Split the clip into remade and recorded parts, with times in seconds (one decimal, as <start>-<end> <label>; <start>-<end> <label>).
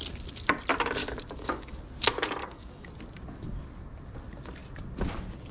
0.0-1.0 recorded; 1.0-1.8 remade; 1.8-2.4 recorded; 2.4-2.9 remade; 2.9-5.5 recorded